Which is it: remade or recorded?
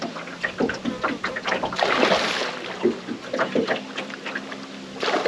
recorded